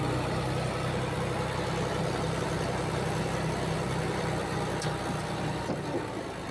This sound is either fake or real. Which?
real